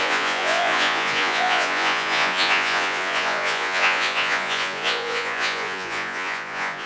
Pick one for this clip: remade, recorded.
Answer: remade